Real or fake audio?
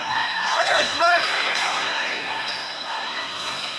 fake